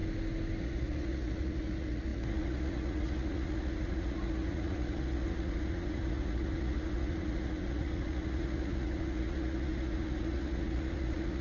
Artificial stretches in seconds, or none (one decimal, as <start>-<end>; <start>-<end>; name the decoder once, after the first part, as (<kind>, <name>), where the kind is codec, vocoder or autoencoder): 0.6-11.4 (vocoder, Vocos)